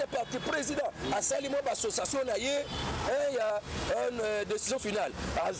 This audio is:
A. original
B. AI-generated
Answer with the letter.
A